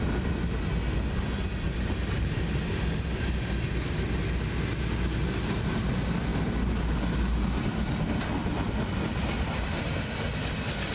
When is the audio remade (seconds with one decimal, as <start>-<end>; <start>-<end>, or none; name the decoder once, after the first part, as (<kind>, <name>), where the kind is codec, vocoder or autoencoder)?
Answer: none